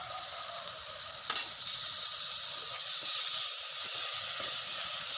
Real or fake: real